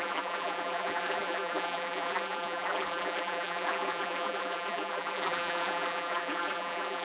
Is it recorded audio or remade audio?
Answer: remade